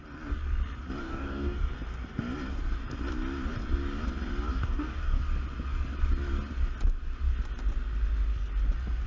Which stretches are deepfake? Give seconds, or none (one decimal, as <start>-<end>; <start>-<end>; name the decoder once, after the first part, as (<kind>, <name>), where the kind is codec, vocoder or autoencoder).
1.0-1.7 (codec, DAC); 4.5-5.2